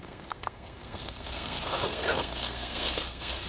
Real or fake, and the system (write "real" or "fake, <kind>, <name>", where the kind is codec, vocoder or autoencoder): fake, codec, SNAC